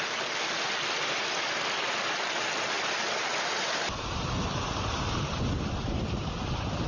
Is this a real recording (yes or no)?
yes